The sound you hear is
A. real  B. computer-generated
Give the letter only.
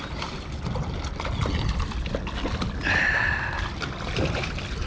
A